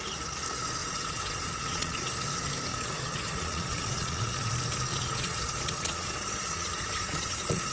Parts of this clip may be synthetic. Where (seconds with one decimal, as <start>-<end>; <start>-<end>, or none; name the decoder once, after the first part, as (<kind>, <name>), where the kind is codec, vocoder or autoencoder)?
0.8-2.1 (vocoder, Vocos); 2.7-4.5; 4.9-7.7